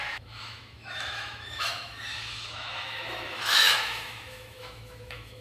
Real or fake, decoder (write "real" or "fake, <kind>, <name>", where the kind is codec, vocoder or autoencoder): fake, autoencoder, DAC-VAE